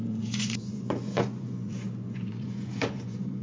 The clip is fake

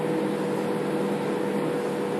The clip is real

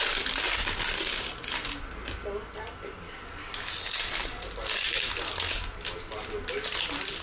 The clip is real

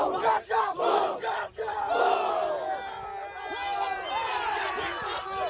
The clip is real